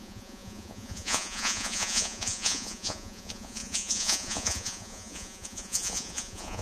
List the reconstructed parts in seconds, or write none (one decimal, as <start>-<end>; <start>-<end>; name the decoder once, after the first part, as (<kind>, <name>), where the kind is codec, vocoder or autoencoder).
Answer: 0.0-6.6 (vocoder, Vocos)